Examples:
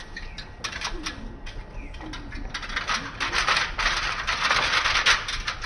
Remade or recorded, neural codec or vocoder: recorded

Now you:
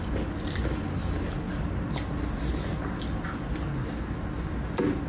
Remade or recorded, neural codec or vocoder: recorded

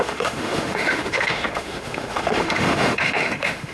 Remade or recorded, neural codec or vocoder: remade, autoencoder, DAC-VAE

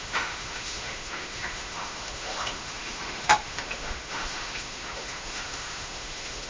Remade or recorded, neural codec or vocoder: remade, autoencoder, DAC-VAE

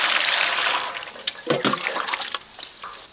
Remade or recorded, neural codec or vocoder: recorded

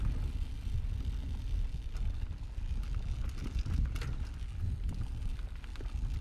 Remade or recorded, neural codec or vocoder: recorded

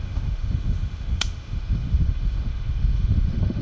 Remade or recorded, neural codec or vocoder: remade, autoencoder, DAC-VAE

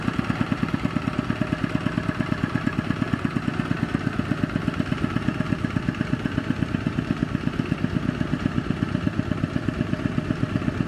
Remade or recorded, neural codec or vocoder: recorded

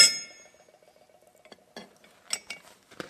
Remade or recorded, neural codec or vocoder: recorded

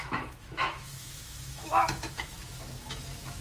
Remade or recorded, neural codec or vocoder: remade, autoencoder, DAC-VAE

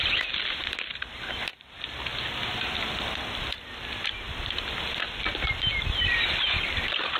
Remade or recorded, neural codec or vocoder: recorded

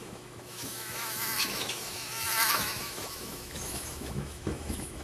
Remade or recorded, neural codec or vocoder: remade, autoencoder, DAC-VAE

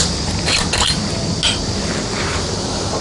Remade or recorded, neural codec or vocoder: recorded